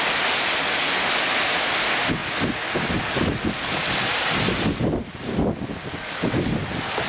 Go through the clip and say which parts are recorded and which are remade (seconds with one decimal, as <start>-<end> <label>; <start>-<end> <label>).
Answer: 0.0-7.1 recorded